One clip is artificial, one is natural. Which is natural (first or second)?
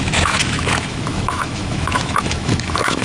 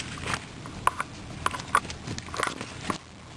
second